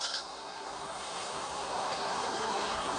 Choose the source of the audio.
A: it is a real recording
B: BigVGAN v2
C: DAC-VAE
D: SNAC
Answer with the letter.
D